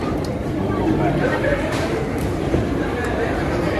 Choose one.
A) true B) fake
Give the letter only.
B